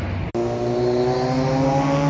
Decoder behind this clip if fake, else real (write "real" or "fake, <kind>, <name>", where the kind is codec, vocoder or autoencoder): real